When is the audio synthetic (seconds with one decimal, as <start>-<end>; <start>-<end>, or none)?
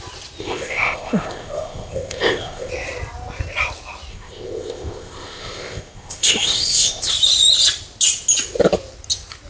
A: 0.4-2.7; 4.1-7.1